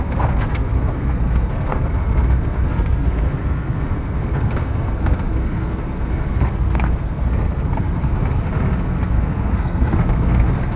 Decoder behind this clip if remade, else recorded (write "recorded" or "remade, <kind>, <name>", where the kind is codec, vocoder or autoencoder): remade, codec, SNAC